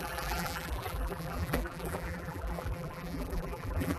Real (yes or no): no